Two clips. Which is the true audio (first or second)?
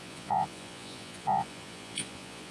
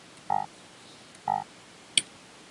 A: second